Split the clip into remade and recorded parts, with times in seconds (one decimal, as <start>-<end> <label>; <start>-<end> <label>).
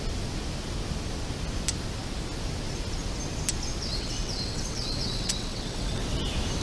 0.0-3.9 recorded; 3.9-6.0 remade; 6.0-6.6 recorded